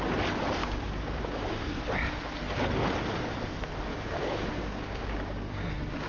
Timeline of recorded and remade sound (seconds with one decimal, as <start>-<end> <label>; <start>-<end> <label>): 0.0-0.6 recorded; 0.6-1.8 remade; 1.8-3.9 recorded; 3.9-6.1 remade